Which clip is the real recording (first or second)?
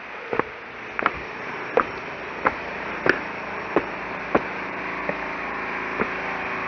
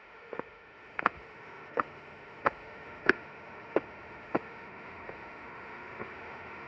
first